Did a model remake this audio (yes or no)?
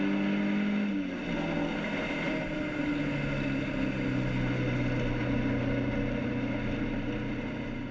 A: no